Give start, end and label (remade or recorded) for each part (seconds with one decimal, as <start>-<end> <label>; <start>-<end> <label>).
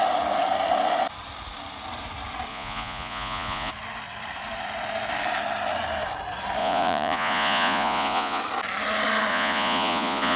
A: 0.0-2.5 recorded; 2.5-3.7 remade; 3.7-6.6 recorded; 6.6-8.4 remade; 8.4-9.3 recorded; 9.3-10.4 remade